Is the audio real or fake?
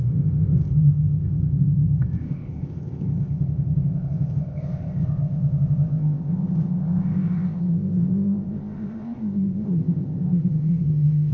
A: fake